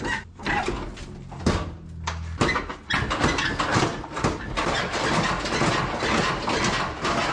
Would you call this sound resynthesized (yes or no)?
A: no